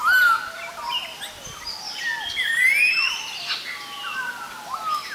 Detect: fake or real real